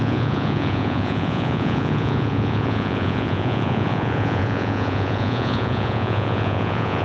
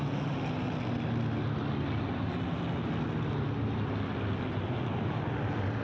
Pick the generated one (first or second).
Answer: first